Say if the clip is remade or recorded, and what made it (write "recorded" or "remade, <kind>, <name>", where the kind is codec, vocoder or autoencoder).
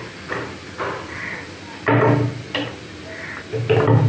recorded